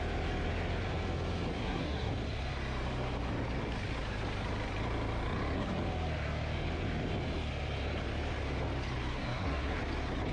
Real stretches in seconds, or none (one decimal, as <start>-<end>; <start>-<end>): 0.0-1.5; 2.1-9.1; 9.8-10.3